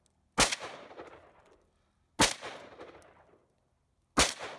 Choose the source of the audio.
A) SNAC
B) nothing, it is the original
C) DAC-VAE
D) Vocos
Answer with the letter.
B